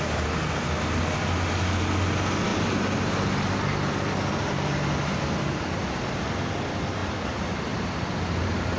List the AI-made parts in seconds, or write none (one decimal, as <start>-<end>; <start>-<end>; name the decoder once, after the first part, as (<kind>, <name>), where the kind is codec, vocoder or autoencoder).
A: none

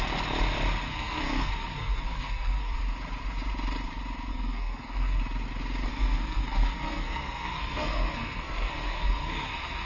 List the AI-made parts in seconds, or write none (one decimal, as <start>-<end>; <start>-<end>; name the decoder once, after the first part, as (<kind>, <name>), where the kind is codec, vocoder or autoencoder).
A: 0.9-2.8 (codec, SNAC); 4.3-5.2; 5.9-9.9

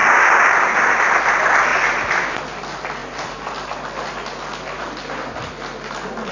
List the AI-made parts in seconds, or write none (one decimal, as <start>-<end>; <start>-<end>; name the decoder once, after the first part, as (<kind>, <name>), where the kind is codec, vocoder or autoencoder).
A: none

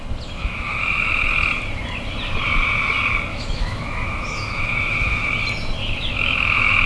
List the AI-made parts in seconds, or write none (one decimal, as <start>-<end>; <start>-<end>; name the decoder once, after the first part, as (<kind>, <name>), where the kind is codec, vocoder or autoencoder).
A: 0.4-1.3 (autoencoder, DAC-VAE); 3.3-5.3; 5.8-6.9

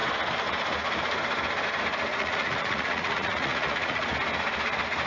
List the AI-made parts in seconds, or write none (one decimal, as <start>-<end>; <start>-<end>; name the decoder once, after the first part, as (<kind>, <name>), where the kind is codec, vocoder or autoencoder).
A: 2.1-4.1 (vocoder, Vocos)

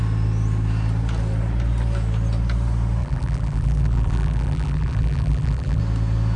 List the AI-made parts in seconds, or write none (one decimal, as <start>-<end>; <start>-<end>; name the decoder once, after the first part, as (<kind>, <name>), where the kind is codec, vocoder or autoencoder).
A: 3.0-5.8 (vocoder, BigVGAN v2)

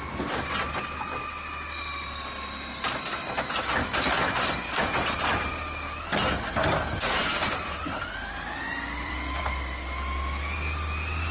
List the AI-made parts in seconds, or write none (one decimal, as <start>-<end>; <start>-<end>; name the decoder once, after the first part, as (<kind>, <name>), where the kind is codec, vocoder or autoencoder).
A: 7.2-9.4 (vocoder, BigVGAN v2)